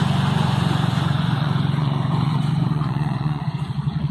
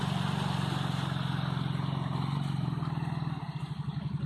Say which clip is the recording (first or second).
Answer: second